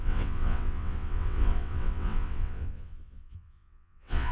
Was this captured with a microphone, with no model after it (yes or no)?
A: no